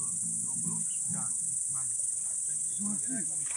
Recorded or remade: recorded